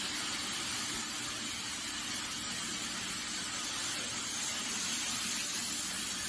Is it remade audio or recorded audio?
recorded